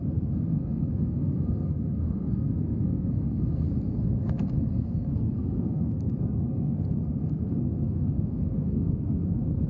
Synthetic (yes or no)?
yes